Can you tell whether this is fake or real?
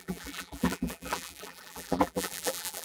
fake